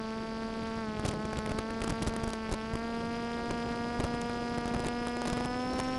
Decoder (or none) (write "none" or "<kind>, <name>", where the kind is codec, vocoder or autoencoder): none